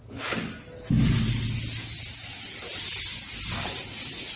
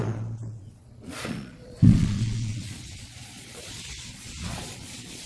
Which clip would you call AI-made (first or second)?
second